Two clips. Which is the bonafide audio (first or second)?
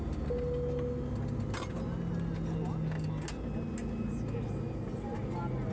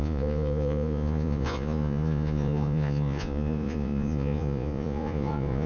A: first